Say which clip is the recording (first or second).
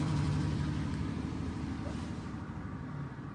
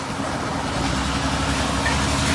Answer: second